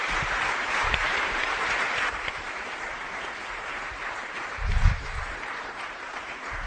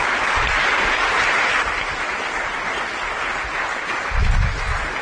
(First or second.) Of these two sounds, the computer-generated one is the first